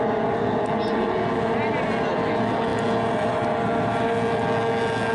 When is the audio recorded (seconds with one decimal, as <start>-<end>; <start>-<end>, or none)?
0.0-5.1